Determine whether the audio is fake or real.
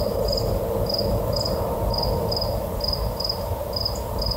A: real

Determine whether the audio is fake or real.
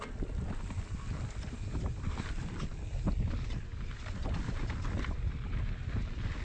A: real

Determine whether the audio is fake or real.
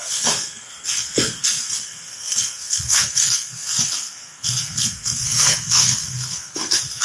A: fake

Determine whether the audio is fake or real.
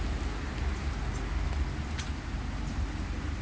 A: real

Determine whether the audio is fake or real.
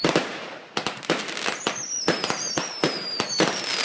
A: real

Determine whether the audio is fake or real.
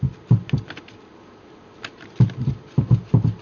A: real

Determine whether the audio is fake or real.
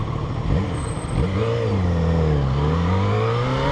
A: real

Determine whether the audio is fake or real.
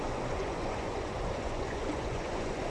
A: fake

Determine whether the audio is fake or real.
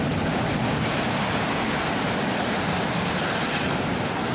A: real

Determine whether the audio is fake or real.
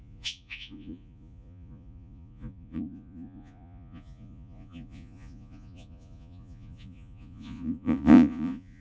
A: fake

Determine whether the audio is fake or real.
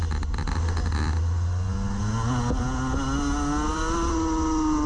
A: real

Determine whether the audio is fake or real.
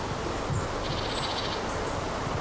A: real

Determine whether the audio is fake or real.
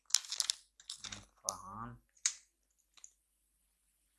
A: real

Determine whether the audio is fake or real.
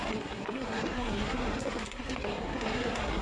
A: fake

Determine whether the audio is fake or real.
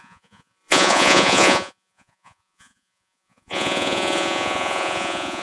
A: fake